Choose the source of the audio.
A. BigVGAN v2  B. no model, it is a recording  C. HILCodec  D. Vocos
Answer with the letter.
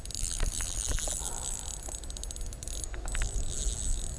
B